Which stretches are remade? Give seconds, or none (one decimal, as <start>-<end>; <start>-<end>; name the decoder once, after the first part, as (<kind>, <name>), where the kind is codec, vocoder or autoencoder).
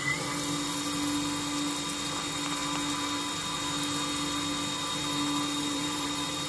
5.6-6.5 (vocoder, BigVGAN v2)